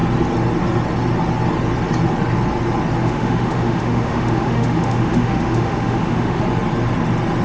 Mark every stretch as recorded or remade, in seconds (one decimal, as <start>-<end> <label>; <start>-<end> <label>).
0.0-3.0 recorded; 3.0-6.4 remade; 6.4-7.4 recorded